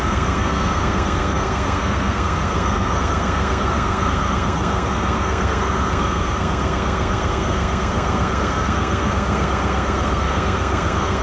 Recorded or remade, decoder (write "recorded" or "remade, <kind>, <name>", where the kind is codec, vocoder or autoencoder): remade, codec, SNAC